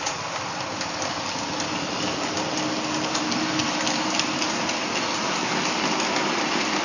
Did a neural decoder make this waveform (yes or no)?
no